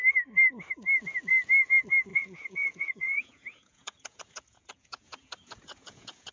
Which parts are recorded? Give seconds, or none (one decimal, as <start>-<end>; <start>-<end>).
0.0-2.1